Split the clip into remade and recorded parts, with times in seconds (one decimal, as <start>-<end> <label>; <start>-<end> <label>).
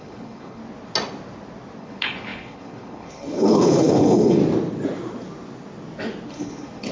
0.0-0.6 remade; 0.6-1.8 recorded; 1.8-4.4 remade; 4.4-6.3 recorded; 6.3-6.9 remade